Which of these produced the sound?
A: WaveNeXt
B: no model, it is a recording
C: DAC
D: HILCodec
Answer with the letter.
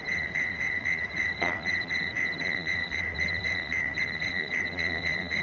A